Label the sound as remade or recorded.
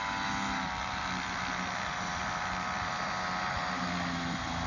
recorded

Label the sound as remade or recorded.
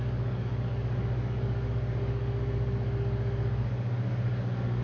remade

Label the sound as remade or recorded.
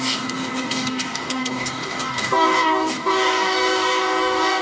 remade